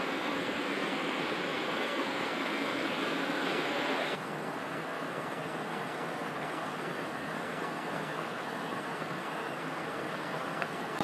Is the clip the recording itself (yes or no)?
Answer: no